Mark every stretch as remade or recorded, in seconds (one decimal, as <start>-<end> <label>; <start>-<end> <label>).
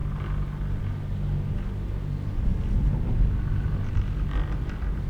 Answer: 0.0-5.1 recorded